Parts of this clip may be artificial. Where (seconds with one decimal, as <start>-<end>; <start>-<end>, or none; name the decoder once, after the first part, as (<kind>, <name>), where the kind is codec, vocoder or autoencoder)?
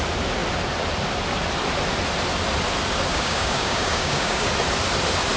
3.1-4.5 (codec, DAC)